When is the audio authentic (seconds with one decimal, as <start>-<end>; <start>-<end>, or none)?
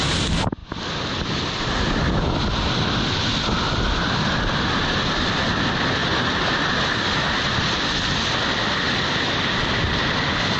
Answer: 0.0-6.0; 7.1-10.6